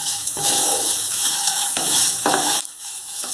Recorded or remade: remade